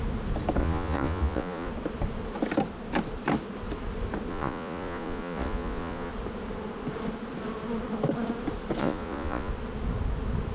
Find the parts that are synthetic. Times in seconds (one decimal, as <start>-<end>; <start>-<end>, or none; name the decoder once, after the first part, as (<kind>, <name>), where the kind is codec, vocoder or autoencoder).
0.6-1.7 (vocoder, Vocos); 4.3-6.1; 8.8-9.5